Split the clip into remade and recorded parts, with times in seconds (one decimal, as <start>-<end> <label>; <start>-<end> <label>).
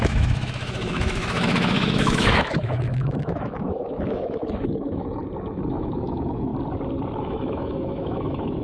0.0-5.2 remade; 5.2-5.7 recorded; 5.7-6.5 remade; 6.5-7.2 recorded; 7.2-8.6 remade